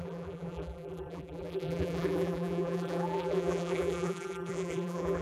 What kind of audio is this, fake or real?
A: fake